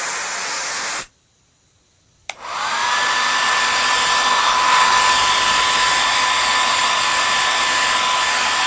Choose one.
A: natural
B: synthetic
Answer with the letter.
A